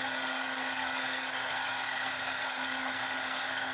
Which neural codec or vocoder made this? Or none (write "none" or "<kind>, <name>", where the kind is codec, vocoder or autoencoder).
codec, SNAC